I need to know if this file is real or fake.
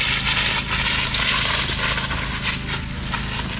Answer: real